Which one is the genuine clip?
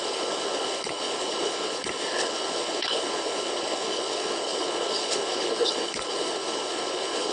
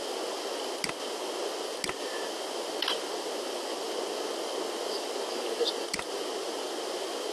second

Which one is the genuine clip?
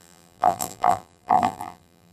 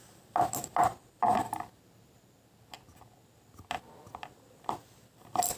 second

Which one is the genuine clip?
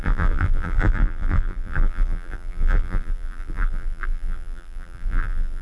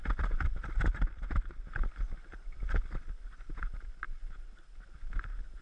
second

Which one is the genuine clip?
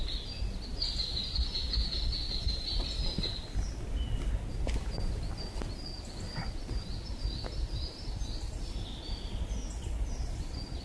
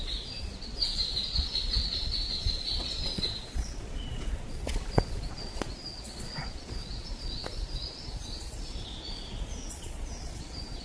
first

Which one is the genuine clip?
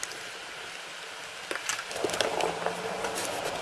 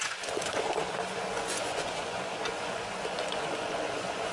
first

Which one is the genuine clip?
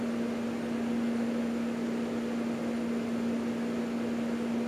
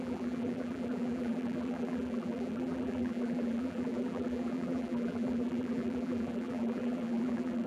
first